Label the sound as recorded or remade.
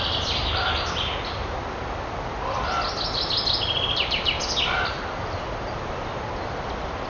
recorded